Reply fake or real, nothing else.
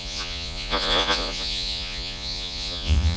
fake